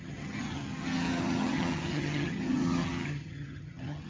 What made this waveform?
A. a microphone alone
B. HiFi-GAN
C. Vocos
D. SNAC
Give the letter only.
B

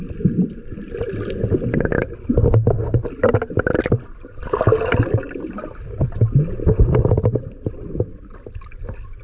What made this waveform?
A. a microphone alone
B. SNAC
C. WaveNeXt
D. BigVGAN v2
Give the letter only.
A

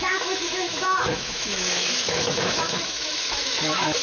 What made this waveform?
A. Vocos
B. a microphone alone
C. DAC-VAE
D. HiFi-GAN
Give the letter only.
C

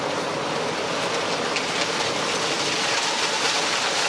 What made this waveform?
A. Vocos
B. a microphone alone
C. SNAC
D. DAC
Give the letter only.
B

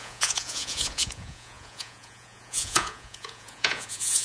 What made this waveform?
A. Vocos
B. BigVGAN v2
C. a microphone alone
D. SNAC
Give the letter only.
A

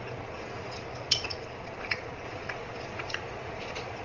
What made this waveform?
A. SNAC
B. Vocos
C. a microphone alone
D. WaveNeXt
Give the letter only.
B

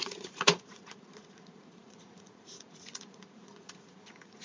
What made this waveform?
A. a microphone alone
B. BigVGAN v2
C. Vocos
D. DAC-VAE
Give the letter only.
C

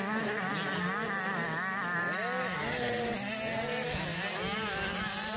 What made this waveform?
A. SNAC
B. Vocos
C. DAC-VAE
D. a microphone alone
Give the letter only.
D